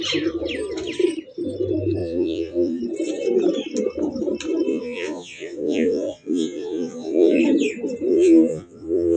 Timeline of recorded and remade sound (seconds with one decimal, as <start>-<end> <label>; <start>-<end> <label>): 0.0-2.0 recorded; 2.0-2.8 remade; 2.8-4.7 recorded; 4.7-7.4 remade; 7.4-8.1 recorded; 8.1-9.2 remade